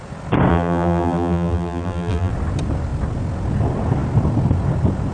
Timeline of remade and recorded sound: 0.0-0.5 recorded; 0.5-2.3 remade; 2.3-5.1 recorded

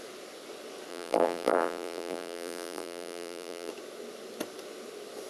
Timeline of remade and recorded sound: 0.0-0.9 recorded; 0.9-3.7 remade; 3.7-5.3 recorded

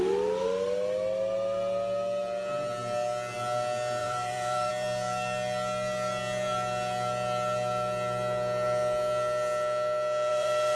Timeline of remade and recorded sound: 0.0-4.0 recorded; 4.0-4.7 remade; 4.7-10.3 recorded; 10.3-10.8 remade

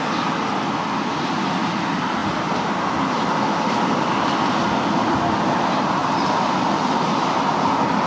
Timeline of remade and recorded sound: 0.0-8.1 recorded